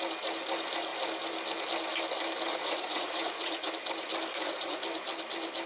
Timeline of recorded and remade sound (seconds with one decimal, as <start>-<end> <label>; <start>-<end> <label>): 0.0-2.5 recorded; 2.5-3.7 remade; 3.7-4.3 recorded; 4.3-4.8 remade; 4.8-5.7 recorded